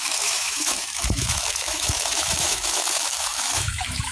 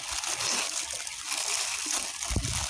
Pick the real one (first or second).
second